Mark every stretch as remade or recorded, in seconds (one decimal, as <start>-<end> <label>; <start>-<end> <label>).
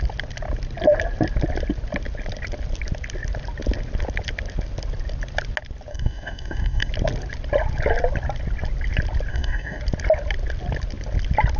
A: 0.0-5.9 recorded; 5.9-6.9 remade; 6.9-9.3 recorded; 9.3-9.8 remade; 9.8-11.6 recorded